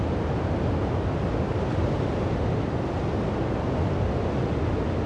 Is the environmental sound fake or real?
real